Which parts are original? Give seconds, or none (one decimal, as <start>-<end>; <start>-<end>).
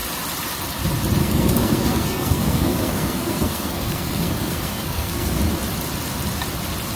0.0-1.2; 5.4-7.0